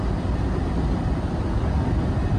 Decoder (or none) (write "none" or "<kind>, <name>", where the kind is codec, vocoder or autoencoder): vocoder, BigVGAN v2